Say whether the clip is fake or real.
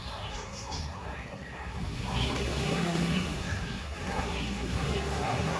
fake